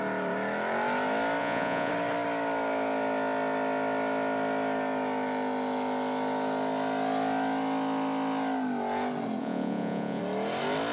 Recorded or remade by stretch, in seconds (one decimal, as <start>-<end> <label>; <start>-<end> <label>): 0.0-1.4 recorded; 1.4-1.9 remade; 1.9-9.4 recorded; 9.4-10.2 remade; 10.2-10.9 recorded